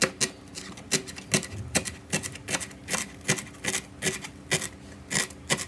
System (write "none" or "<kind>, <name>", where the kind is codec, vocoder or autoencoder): none